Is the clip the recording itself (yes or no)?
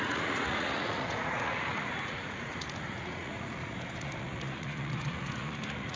no